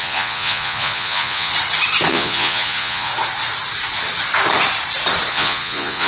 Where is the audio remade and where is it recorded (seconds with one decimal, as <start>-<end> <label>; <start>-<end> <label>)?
0.0-1.5 remade; 1.5-2.1 recorded; 2.1-3.1 remade; 3.1-5.3 recorded; 5.3-6.1 remade